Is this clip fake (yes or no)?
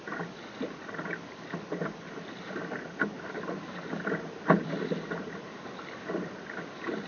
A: no